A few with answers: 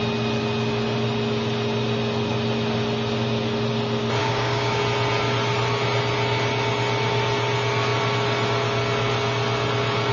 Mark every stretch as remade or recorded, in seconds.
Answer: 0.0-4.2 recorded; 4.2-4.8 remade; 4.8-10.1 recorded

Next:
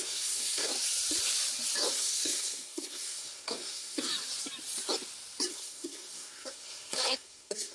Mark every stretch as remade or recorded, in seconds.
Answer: 0.0-0.7 remade; 0.7-1.9 recorded; 1.9-4.1 remade; 4.1-5.5 recorded; 5.5-7.7 remade

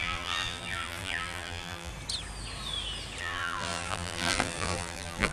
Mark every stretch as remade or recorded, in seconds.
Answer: 0.0-1.9 remade; 1.9-3.2 recorded; 3.2-5.3 remade

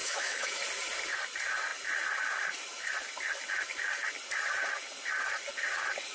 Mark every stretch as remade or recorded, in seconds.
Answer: 0.0-0.6 remade; 0.6-6.1 recorded

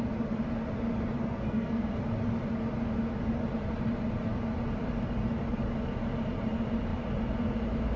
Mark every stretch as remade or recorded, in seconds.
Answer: 0.0-1.2 recorded; 1.2-2.0 remade; 2.0-8.0 recorded

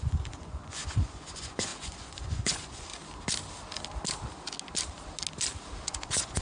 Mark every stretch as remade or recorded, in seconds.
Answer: 0.0-2.9 remade; 2.9-5.8 recorded; 5.8-6.4 remade

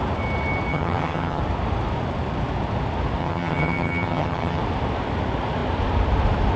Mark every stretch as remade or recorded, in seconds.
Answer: 0.0-0.7 recorded; 0.7-1.4 remade; 1.4-3.2 recorded; 3.2-4.6 remade; 4.6-6.6 recorded

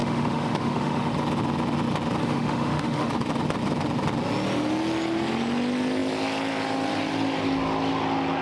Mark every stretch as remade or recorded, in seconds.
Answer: 0.0-1.1 remade; 1.1-2.2 recorded; 2.2-3.1 remade; 3.1-8.4 recorded